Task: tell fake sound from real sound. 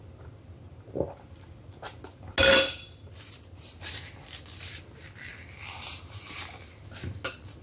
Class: real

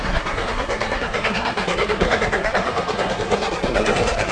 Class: fake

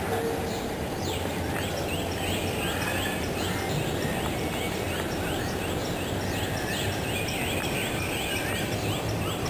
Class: real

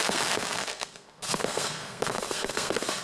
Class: fake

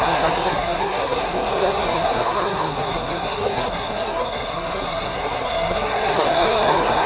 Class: fake